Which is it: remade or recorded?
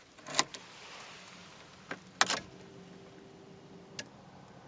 recorded